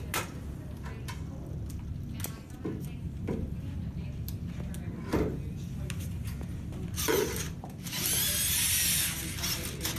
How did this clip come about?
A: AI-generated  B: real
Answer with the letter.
B